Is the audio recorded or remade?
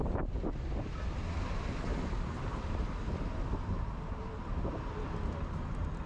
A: recorded